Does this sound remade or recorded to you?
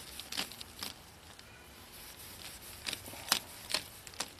recorded